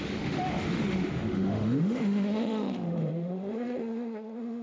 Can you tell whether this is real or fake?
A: fake